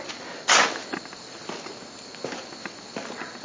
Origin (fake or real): real